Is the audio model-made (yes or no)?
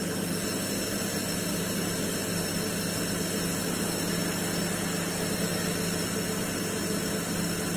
no